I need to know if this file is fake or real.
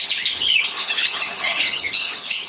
fake